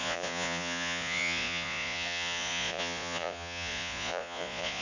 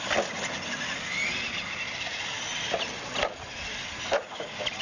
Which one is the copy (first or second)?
first